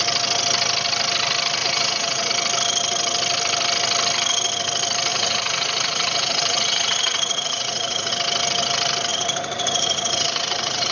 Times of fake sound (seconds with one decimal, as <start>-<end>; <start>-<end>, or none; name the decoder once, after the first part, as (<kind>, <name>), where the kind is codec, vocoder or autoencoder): 1.6-2.3 (vocoder, Vocos); 5.1-8.1; 9.1-10.9